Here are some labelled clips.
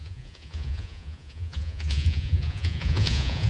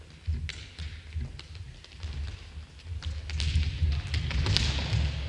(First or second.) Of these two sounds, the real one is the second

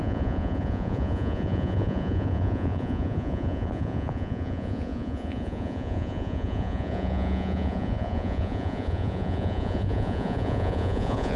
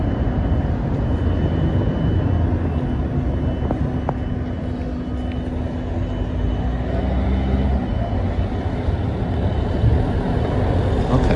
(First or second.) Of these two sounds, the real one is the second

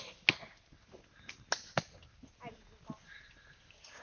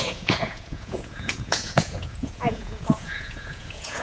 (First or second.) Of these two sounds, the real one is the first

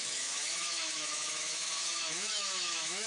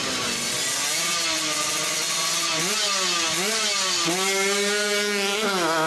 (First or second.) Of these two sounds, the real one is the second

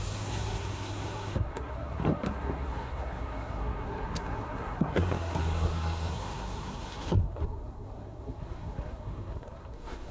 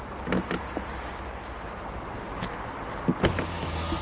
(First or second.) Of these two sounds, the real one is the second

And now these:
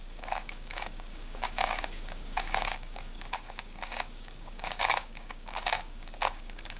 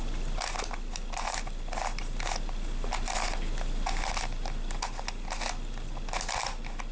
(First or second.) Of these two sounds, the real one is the second